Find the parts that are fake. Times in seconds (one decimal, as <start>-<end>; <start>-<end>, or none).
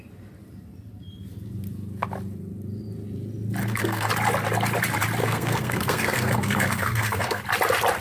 3.6-4.1; 5.2-7.4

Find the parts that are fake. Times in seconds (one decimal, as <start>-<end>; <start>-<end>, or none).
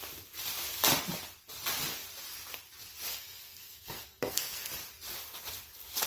3.1-4.7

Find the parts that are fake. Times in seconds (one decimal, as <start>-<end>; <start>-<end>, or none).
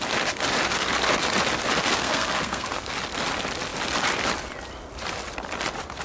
1.9-2.9